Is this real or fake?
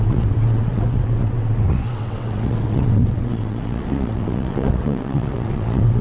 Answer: fake